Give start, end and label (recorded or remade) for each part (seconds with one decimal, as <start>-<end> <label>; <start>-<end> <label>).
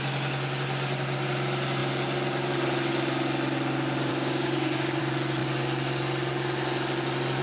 0.0-4.1 recorded; 4.1-5.0 remade; 5.0-7.4 recorded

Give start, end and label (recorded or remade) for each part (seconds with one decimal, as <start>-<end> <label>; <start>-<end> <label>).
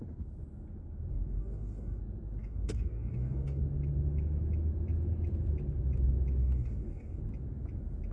0.0-1.1 recorded; 1.1-2.0 remade; 2.0-2.4 recorded; 2.4-3.6 remade; 3.6-6.4 recorded; 6.4-7.2 remade; 7.2-8.1 recorded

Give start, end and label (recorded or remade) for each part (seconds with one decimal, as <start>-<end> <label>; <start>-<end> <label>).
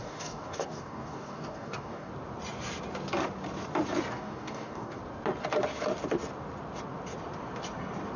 0.0-2.1 remade; 2.1-4.1 recorded; 4.1-5.0 remade; 5.0-8.2 recorded